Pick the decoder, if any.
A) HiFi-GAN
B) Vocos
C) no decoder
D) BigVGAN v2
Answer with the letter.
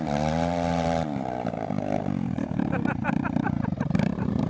D